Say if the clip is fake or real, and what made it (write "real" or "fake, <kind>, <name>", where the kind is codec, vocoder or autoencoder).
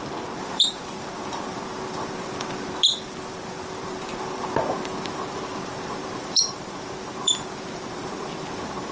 fake, vocoder, BigVGAN v2